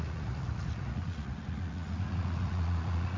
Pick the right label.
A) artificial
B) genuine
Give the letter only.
A